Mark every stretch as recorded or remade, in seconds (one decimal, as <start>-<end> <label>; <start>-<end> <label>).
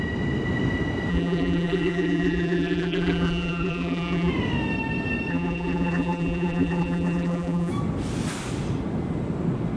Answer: 0.0-1.1 recorded; 1.1-4.3 remade; 4.3-5.3 recorded; 5.3-7.7 remade; 7.7-9.8 recorded